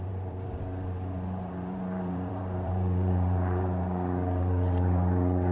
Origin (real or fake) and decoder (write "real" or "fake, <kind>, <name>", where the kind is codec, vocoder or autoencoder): fake, vocoder, BigVGAN v2